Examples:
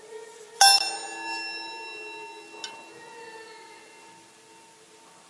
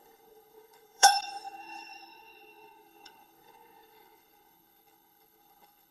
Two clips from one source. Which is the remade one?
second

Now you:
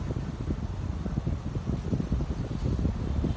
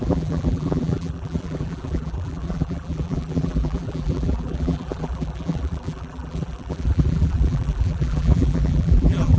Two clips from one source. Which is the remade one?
second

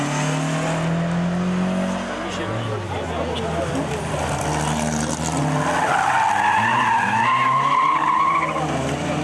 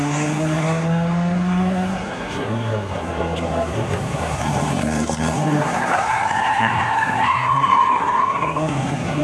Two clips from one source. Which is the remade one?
second